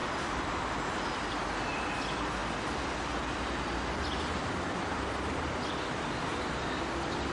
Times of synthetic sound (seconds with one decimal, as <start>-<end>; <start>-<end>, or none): 0.0-0.6; 2.4-6.8